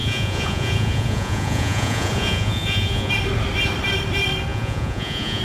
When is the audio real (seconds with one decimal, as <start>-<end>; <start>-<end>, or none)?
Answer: 3.1-4.5